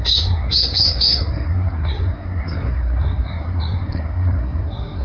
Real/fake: fake